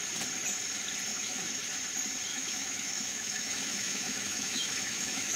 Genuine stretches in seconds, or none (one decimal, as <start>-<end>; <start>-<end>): 0.0-1.1; 1.6-2.3